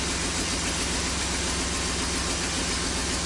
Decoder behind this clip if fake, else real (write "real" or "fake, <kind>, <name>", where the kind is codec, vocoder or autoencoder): real